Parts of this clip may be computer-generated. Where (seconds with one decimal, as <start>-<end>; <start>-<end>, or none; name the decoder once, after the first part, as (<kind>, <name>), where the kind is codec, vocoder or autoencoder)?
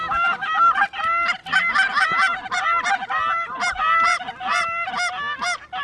none